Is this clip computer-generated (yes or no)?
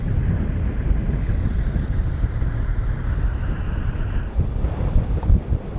yes